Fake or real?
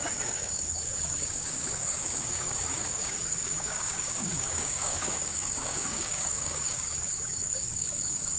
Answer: fake